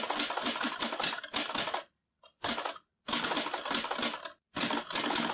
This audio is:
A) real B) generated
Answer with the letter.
A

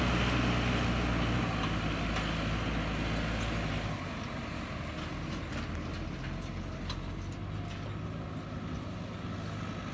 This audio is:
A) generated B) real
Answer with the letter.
B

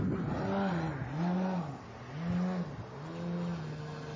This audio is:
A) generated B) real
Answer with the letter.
B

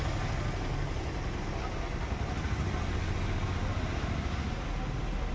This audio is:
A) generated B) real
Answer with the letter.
B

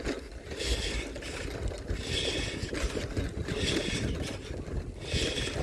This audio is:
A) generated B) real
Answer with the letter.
B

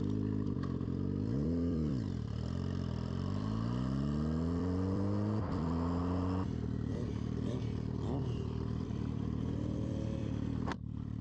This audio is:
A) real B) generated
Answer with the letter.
B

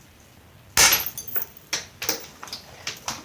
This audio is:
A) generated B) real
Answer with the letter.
B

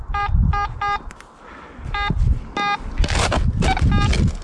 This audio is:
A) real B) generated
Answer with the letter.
A